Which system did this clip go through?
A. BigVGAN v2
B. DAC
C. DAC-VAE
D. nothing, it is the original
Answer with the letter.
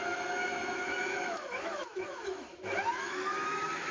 C